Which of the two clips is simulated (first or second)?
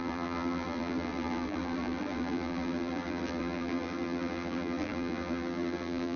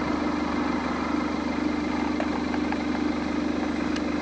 first